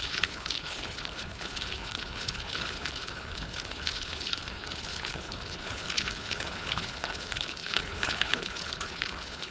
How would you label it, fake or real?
fake